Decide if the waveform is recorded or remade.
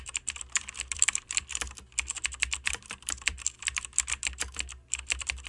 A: remade